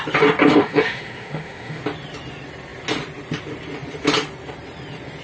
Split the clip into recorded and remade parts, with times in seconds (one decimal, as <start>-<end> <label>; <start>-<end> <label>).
0.0-0.5 recorded; 0.5-1.8 remade; 1.8-5.2 recorded